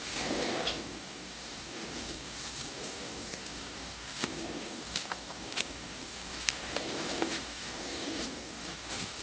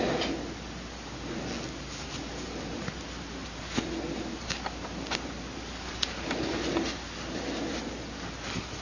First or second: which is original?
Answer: second